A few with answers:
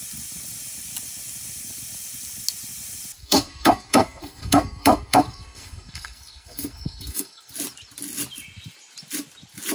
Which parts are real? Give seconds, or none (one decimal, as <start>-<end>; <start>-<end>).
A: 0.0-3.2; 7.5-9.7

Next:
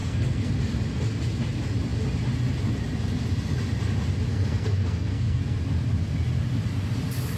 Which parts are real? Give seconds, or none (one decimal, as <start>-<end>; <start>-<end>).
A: 0.5-4.3; 5.6-7.4

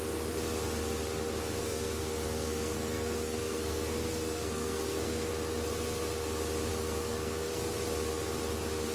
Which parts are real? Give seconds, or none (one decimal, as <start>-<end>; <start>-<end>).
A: 0.0-1.6; 5.3-6.7; 7.6-8.9

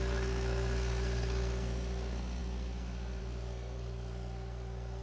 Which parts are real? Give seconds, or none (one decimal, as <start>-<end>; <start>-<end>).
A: none